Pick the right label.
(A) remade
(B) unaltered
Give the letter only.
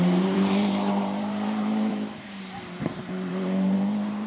A